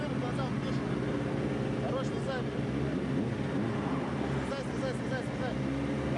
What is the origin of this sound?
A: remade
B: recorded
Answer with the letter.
B